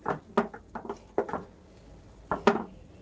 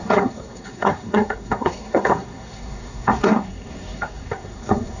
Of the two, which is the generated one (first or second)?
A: second